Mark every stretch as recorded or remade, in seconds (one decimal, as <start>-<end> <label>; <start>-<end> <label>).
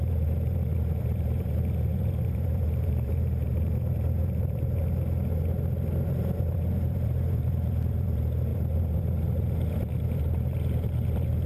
0.0-4.8 remade; 4.8-6.4 recorded; 6.4-11.5 remade